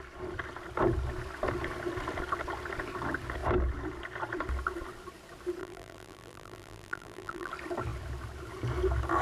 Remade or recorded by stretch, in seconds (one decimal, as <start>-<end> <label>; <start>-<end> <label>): 0.0-5.6 recorded; 5.6-7.5 remade; 7.5-9.2 recorded